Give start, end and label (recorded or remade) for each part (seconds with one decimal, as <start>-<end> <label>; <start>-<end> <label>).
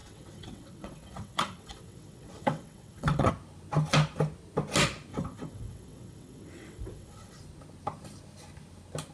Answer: 0.0-3.3 remade; 3.3-5.1 recorded; 5.1-7.4 remade; 7.4-9.1 recorded